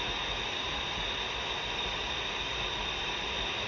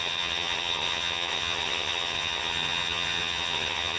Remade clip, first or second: second